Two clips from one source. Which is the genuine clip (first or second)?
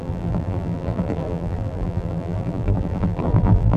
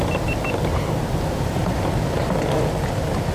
second